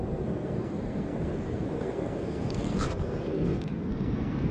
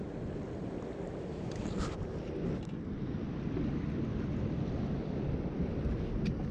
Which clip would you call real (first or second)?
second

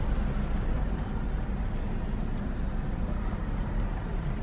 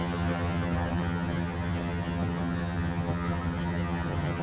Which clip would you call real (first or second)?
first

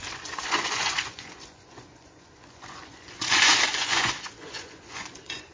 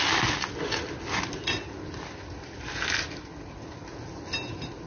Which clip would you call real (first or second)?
second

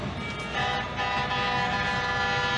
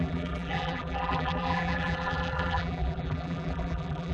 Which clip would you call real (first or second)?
first